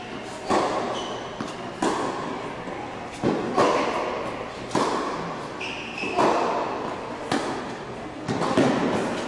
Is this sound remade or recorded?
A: recorded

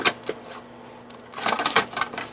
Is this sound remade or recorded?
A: recorded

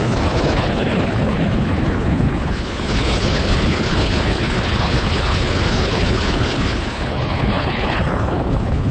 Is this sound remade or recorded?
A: remade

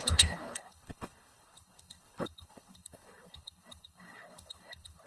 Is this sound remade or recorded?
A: remade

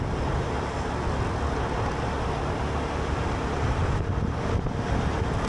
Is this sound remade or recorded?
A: recorded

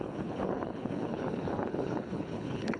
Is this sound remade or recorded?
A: remade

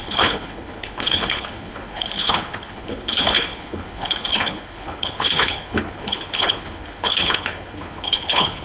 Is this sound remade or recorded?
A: remade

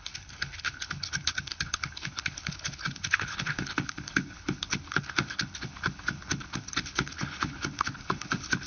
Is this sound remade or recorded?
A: remade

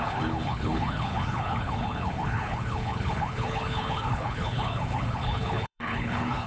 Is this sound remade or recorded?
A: remade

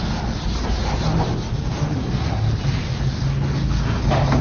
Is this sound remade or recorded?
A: recorded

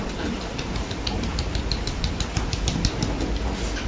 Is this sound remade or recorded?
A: recorded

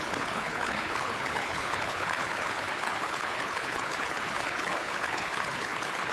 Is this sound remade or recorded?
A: remade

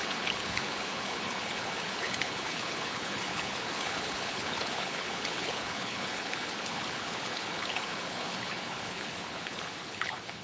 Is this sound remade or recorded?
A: remade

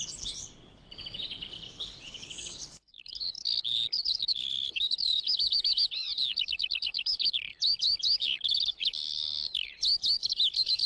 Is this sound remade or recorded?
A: remade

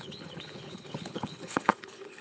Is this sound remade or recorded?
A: remade